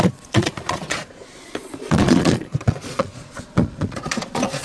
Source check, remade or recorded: remade